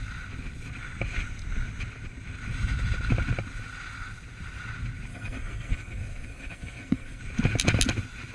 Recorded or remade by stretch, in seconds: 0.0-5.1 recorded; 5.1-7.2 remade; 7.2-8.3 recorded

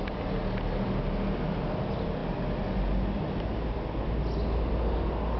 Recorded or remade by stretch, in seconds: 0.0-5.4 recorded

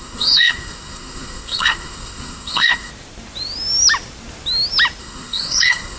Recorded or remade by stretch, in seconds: 0.0-2.9 remade; 2.9-5.0 recorded; 5.0-6.0 remade

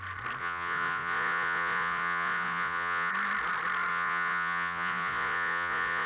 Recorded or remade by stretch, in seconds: 0.0-0.4 recorded; 0.4-3.1 remade; 3.1-3.9 recorded; 3.9-6.1 remade